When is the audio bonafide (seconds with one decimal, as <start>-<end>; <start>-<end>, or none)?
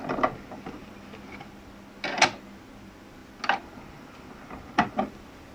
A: 0.0-5.5